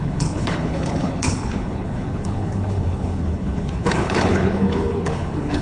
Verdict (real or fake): fake